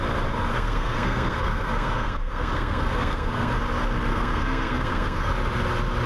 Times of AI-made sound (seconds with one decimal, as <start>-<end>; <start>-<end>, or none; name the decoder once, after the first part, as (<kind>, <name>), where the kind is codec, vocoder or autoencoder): 0.5-3.5 (codec, SNAC); 4.1-5.3